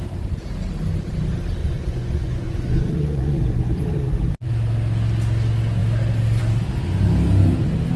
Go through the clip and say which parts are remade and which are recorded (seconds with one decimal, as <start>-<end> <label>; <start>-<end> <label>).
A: 0.0-1.6 recorded; 1.6-4.5 remade; 4.5-8.0 recorded